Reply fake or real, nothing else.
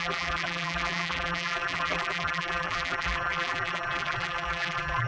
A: fake